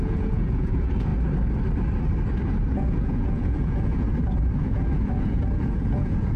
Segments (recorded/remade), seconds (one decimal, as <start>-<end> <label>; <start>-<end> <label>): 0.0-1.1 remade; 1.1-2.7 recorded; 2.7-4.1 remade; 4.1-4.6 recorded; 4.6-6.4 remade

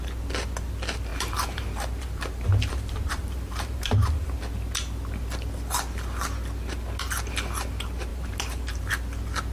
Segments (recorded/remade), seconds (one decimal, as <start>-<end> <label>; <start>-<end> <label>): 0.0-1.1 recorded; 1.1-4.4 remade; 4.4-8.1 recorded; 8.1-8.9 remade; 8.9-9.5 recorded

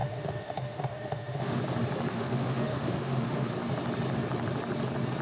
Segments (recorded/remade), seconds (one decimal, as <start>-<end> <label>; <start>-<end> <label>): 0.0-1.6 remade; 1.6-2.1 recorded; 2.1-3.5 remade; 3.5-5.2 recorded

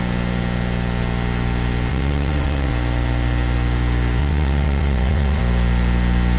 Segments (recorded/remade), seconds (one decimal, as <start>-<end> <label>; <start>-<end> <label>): 0.0-1.9 recorded; 1.9-2.7 remade; 2.7-4.2 recorded; 4.2-5.4 remade; 5.4-6.4 recorded

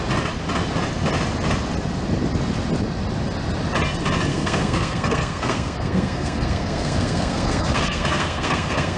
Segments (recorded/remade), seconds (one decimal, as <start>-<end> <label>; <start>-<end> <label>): 0.0-4.3 recorded; 4.3-9.0 remade